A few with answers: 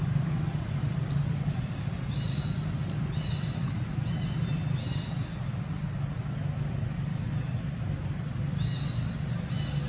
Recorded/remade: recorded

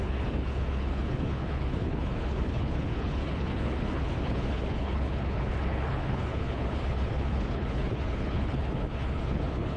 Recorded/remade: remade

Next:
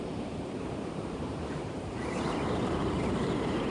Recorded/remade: remade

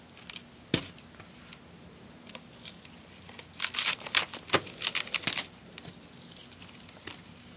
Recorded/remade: recorded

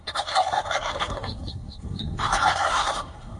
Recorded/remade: remade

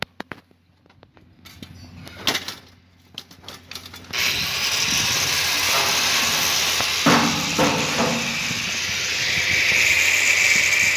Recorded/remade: recorded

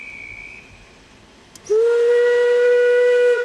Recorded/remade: recorded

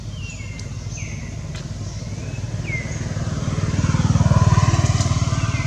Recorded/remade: recorded